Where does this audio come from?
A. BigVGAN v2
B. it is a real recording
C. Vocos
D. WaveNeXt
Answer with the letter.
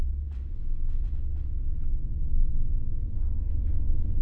D